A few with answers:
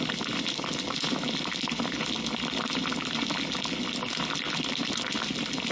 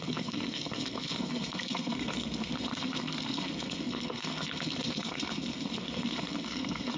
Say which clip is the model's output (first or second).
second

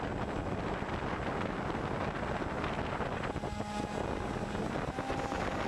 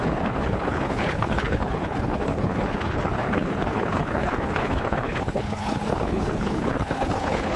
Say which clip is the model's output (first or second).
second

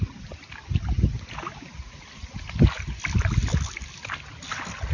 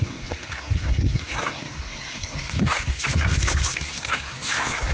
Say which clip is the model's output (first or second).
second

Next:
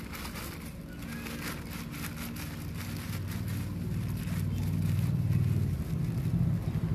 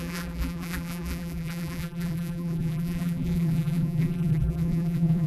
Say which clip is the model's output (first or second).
second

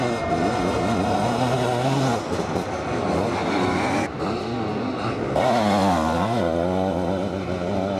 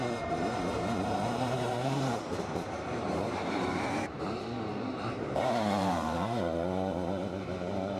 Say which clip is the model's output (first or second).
second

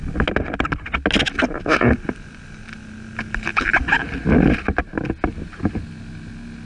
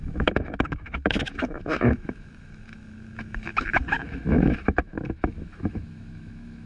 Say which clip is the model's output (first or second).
second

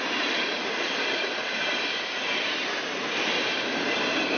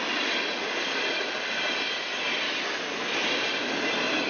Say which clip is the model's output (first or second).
first